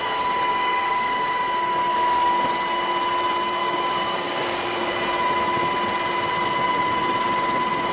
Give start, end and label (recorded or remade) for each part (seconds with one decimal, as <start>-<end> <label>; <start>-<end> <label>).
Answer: 0.0-0.5 recorded; 0.5-1.3 remade; 1.3-1.9 recorded; 1.9-2.5 remade; 2.5-3.6 recorded; 3.6-4.9 remade; 4.9-7.9 recorded